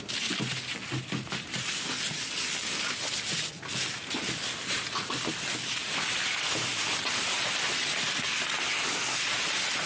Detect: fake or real real